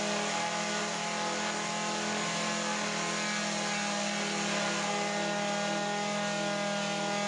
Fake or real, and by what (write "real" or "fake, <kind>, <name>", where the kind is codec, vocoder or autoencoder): real